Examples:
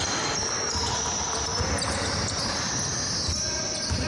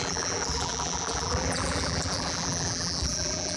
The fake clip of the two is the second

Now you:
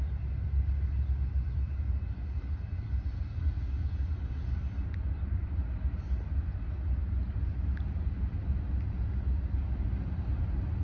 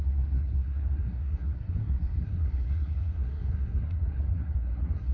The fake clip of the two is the second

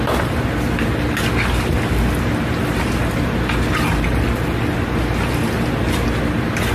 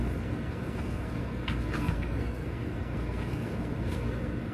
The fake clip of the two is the second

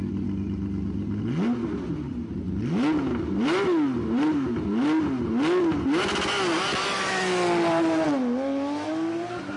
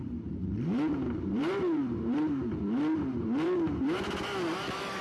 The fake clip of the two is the second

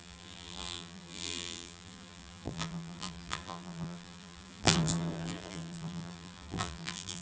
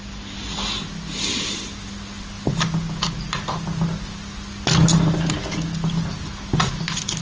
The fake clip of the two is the first